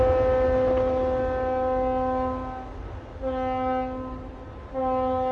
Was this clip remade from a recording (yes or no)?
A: no